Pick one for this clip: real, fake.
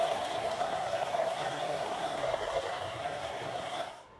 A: fake